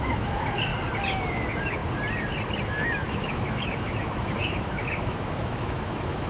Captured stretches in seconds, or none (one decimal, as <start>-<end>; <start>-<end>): 0.7-1.3; 1.8-2.7